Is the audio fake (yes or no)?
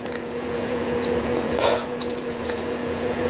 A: yes